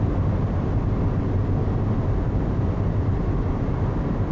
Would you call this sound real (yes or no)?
yes